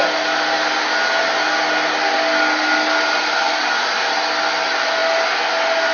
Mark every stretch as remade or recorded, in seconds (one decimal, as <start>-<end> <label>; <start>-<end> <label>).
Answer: 0.0-5.9 recorded